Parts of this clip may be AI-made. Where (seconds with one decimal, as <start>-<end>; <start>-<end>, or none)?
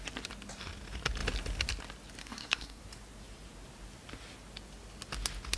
2.2-2.8